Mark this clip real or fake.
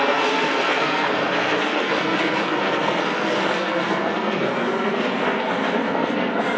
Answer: fake